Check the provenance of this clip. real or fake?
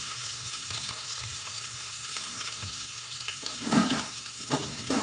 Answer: fake